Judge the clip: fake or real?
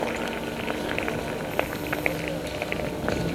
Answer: real